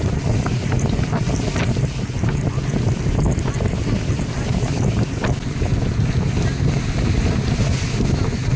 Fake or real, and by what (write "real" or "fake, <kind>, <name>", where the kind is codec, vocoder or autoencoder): real